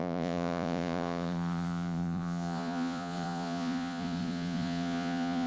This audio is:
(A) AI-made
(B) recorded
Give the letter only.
A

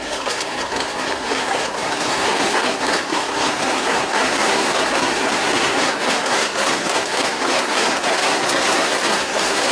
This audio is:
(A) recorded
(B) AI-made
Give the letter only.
B